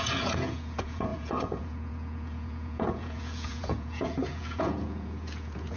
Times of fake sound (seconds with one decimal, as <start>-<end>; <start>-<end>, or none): 0.0-5.8